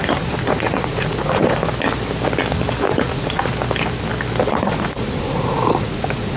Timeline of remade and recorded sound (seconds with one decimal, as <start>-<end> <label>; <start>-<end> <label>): 0.0-1.6 remade; 1.6-2.8 recorded; 2.8-3.5 remade; 3.5-4.5 recorded; 4.5-6.4 remade